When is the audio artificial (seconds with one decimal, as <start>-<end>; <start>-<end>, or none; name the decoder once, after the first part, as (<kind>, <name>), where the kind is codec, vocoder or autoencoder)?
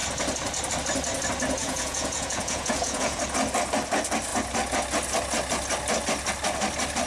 1.6-3.2 (vocoder, Vocos)